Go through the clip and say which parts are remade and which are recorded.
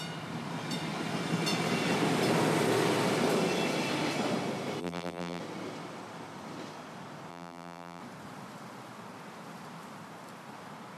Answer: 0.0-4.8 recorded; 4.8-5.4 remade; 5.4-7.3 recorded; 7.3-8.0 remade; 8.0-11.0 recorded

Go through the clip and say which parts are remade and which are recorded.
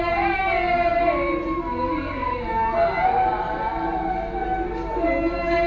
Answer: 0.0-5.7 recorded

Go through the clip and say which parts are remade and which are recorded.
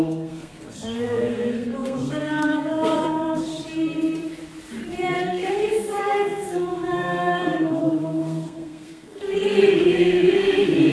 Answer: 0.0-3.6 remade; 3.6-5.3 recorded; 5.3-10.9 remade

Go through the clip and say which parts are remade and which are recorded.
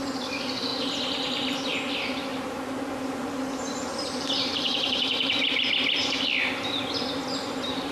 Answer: 0.0-2.3 recorded; 2.3-5.7 remade; 5.7-7.9 recorded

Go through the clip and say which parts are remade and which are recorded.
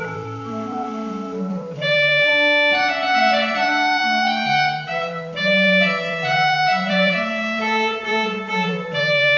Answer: 0.0-2.3 remade; 2.3-3.2 recorded; 3.2-9.4 remade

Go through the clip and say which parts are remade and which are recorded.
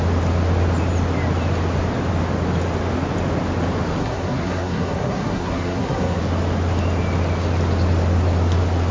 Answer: 0.0-4.0 recorded; 4.0-6.2 remade; 6.2-8.9 recorded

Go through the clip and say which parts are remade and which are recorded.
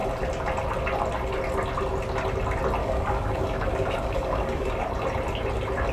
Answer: 0.0-2.8 recorded; 2.8-4.7 remade; 4.7-5.9 recorded